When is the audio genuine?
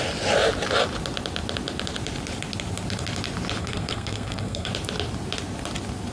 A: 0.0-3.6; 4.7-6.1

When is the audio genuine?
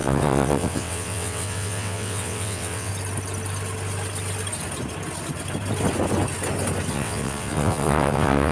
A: 2.9-6.9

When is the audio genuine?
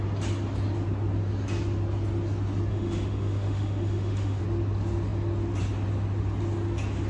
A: 0.0-2.7; 4.4-7.1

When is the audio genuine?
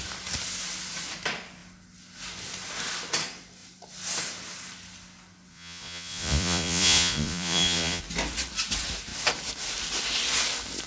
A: 0.0-5.5; 8.0-10.9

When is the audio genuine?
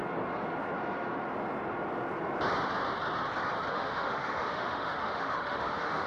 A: 0.0-3.7